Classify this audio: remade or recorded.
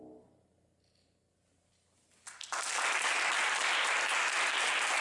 recorded